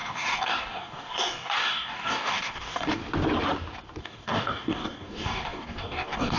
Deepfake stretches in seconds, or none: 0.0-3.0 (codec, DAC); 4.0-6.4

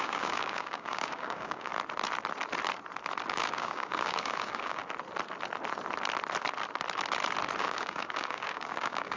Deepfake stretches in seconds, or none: 0.0-1.7 (codec, DAC); 3.3-4.8; 7.6-9.2

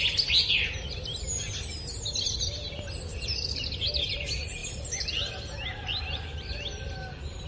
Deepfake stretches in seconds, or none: none

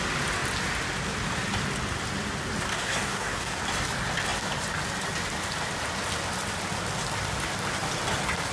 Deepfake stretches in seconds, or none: 2.7-3.6 (codec, DAC)

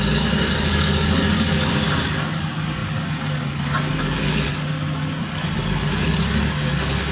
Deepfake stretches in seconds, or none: 0.0-4.5 (codec, DAC); 5.2-7.1